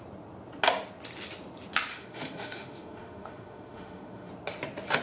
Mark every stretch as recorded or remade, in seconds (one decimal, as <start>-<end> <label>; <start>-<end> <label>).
0.0-1.9 recorded; 1.9-4.3 remade; 4.3-5.0 recorded

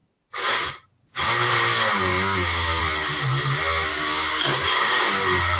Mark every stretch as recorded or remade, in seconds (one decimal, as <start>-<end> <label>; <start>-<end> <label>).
0.0-2.1 recorded; 2.1-2.8 remade; 2.8-3.9 recorded; 3.9-5.0 remade; 5.0-5.6 recorded